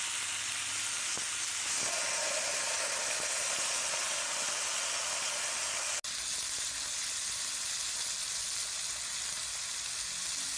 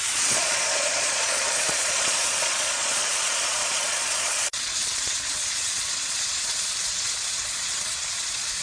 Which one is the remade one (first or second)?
second